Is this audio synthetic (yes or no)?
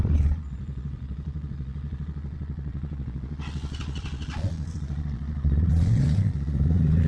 yes